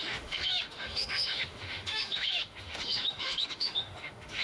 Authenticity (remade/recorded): remade